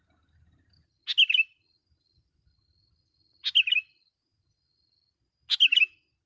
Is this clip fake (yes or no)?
no